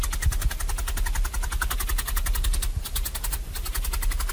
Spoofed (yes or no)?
no